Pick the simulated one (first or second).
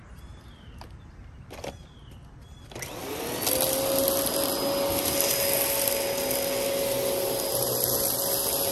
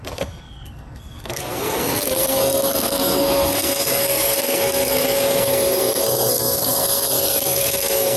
second